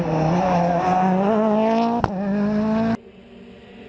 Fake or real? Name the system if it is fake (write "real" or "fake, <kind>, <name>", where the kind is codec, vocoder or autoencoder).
real